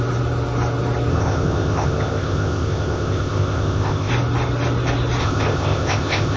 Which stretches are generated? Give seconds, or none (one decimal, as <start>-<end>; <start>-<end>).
1.1-4.1; 5.2-6.4